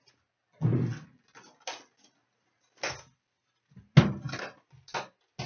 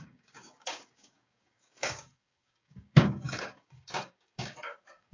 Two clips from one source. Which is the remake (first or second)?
second